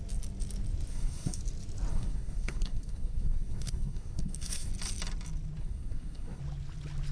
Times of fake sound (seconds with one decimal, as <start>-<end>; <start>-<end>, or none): 0.9-1.4; 1.9-4.7; 5.6-6.4